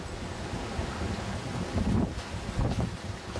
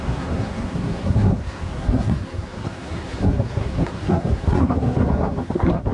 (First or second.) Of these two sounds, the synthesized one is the second